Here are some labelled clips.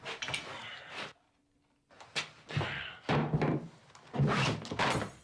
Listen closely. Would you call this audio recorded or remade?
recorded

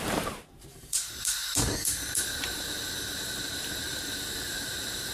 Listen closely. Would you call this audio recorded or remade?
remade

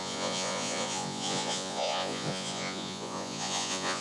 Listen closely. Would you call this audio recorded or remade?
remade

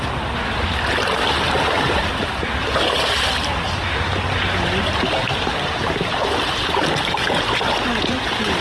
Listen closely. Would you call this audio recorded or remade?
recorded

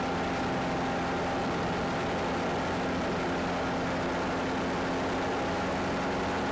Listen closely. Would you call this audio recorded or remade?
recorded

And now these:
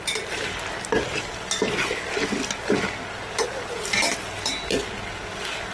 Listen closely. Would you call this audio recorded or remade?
recorded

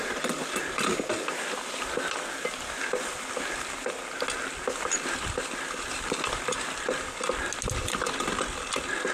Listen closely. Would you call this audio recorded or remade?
recorded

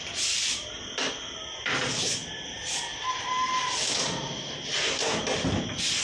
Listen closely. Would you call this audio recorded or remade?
recorded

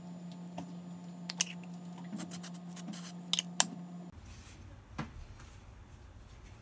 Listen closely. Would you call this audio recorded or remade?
recorded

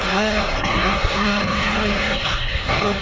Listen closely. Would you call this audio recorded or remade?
remade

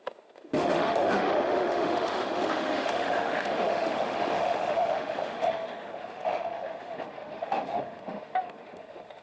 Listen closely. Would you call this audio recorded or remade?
remade